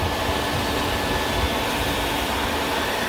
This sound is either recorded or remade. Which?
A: recorded